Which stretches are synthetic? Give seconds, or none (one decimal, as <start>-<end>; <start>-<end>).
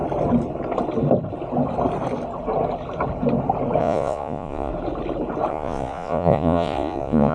3.8-4.7; 5.5-7.3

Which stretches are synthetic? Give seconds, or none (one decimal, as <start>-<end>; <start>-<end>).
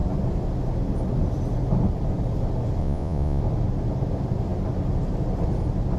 2.8-3.4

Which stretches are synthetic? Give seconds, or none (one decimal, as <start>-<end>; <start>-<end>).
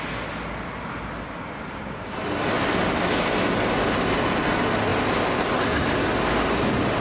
none